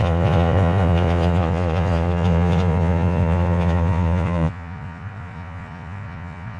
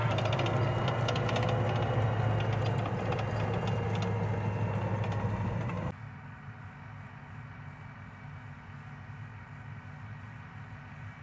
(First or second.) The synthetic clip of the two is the first